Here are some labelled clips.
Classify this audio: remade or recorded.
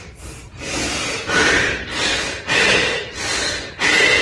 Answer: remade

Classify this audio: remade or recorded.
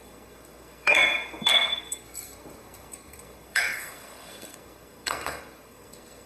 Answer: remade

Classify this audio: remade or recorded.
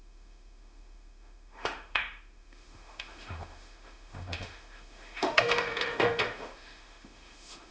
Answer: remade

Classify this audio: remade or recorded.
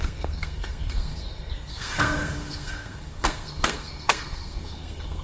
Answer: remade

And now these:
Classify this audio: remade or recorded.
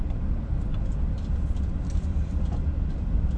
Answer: recorded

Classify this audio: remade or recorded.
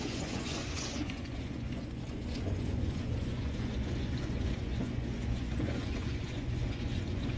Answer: remade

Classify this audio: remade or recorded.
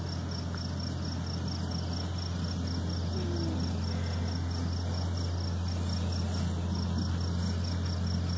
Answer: recorded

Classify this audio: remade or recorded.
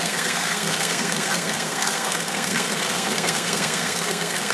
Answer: remade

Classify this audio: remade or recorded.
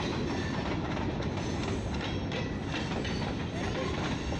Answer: recorded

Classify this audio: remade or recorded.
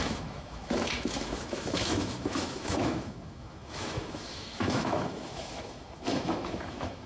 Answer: remade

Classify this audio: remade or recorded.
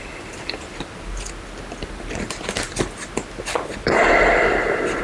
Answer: recorded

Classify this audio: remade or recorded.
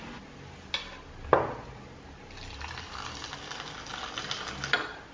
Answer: recorded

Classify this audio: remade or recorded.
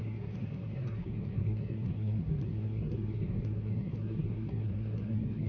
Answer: remade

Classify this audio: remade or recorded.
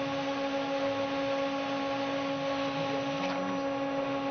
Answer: recorded